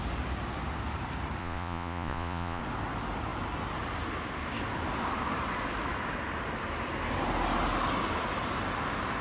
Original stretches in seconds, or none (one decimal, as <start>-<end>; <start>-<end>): 0.0-1.4; 2.6-9.2